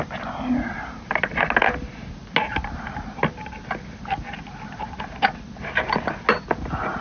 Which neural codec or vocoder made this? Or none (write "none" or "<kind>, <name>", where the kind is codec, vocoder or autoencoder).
none